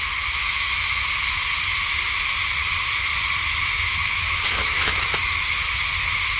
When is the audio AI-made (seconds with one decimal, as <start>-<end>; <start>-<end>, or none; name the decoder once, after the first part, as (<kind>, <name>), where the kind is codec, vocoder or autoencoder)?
0.4-1.0 (autoencoder, DAC-VAE); 4.0-5.6